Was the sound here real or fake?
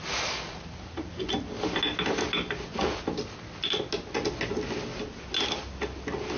real